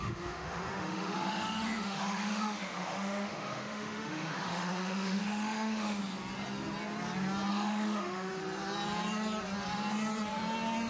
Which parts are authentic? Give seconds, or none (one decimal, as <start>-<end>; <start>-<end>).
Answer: 6.0-7.5; 8.4-10.9